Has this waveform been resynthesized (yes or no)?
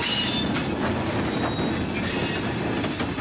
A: no